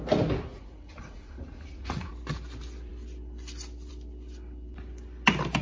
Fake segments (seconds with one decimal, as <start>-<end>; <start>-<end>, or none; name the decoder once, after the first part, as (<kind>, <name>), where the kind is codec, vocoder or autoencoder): 0.5-2.1 (vocoder, Vocos)